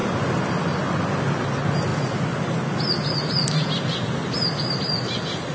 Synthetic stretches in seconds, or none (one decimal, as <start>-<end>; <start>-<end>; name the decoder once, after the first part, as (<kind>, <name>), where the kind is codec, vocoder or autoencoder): none